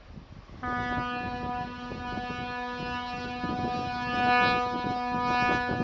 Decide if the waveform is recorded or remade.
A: recorded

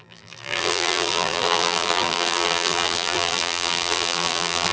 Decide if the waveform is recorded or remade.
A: remade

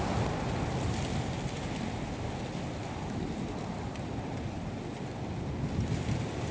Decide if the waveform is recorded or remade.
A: recorded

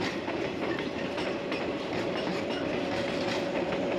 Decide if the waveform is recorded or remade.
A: remade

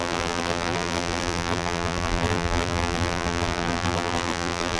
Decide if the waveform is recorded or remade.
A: remade